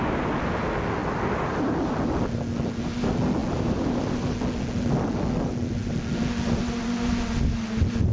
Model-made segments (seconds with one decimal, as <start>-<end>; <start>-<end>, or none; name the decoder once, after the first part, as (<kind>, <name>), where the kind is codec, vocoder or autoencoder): none